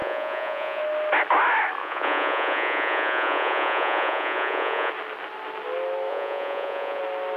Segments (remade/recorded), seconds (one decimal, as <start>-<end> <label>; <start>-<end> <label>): 0.0-0.8 remade; 0.8-1.8 recorded; 1.8-4.9 remade; 4.9-6.1 recorded; 6.1-7.0 remade; 7.0-7.4 recorded